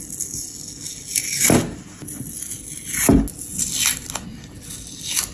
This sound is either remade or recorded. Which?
recorded